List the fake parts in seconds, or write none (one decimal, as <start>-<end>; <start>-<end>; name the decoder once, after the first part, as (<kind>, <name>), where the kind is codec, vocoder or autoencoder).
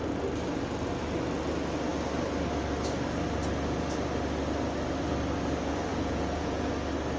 5.9-6.7 (vocoder, Vocos)